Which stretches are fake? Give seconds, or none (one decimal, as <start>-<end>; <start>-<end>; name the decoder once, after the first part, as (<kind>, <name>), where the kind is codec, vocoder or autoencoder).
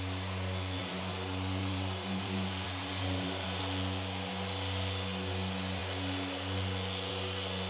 0.8-3.6 (vocoder, BigVGAN v2)